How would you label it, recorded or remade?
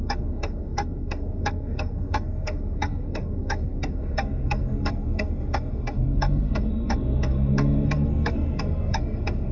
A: remade